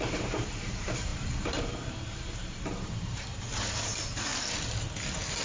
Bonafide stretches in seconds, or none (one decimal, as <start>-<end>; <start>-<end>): 4.3-5.4